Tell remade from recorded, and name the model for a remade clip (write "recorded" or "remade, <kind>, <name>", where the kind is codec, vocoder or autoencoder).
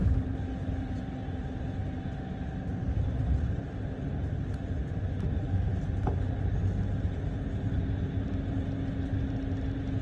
recorded